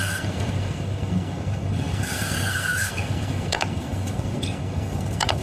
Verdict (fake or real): fake